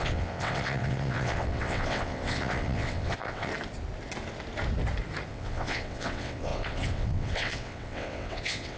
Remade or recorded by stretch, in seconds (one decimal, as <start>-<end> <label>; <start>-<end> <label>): 0.0-3.5 remade; 3.5-5.3 recorded; 5.3-8.8 remade